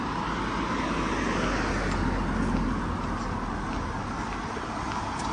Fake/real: real